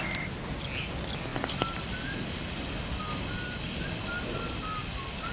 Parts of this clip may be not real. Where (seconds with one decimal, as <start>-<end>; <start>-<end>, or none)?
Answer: none